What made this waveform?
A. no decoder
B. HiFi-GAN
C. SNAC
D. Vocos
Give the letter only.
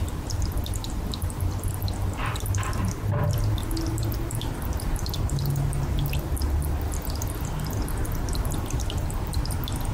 A